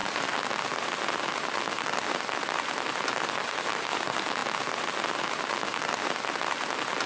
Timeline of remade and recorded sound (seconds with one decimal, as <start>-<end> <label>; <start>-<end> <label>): 0.0-7.1 recorded